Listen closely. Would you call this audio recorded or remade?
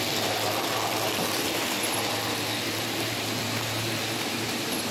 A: recorded